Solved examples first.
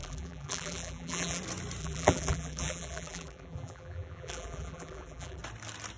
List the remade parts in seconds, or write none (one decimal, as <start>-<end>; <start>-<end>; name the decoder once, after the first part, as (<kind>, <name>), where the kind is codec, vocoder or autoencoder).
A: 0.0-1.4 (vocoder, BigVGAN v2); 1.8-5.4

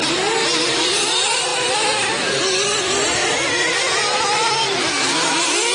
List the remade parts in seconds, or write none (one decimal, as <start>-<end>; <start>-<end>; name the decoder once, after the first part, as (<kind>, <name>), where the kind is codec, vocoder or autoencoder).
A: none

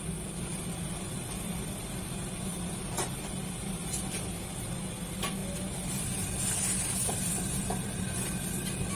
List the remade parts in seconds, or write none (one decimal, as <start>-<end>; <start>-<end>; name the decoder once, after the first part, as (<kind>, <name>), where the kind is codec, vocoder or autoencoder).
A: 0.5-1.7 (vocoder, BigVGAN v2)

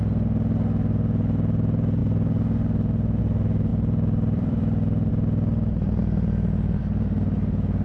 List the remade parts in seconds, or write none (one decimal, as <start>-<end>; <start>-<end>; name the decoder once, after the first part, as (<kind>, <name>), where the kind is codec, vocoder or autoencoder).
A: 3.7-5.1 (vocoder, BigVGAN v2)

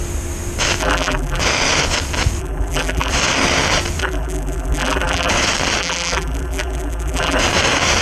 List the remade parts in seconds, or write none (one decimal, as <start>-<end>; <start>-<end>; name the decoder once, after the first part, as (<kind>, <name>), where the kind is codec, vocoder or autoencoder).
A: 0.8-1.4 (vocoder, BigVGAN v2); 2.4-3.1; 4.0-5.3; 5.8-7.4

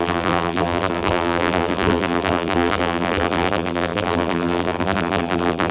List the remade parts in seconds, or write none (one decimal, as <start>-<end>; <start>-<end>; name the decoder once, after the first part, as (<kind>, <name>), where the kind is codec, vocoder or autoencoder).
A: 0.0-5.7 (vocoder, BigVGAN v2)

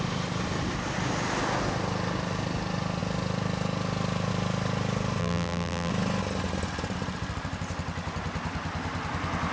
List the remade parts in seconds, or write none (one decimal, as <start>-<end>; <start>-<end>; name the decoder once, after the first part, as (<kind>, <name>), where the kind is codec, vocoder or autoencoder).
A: 5.2-5.9 (vocoder, BigVGAN v2)

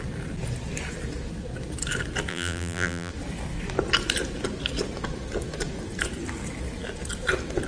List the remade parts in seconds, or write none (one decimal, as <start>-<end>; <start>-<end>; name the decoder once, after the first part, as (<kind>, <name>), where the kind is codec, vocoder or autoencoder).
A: 2.3-3.1 (vocoder, BigVGAN v2)